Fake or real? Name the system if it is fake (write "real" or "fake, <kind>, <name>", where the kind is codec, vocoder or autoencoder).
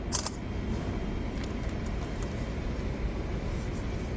real